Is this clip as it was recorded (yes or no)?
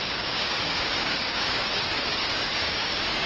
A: no